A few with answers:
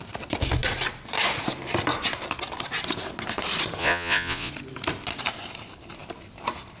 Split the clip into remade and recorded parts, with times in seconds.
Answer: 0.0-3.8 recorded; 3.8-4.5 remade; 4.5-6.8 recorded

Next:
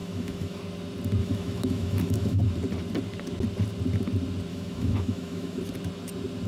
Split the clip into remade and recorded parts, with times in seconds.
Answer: 0.0-0.6 remade; 0.6-1.2 recorded; 1.2-2.4 remade; 2.4-4.5 recorded; 4.5-5.6 remade; 5.6-6.5 recorded

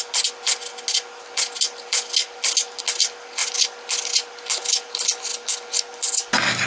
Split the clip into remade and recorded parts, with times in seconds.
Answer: 0.0-6.7 recorded

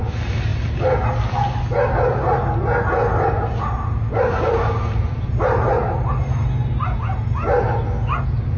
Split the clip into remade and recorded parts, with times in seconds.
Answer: 0.0-8.6 recorded